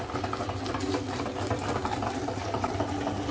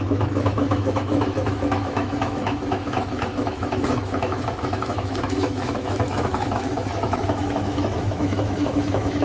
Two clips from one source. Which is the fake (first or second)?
second